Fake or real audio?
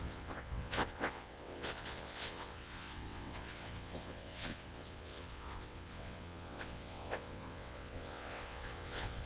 fake